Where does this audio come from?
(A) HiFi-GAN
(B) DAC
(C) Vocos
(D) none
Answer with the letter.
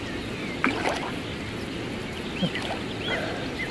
D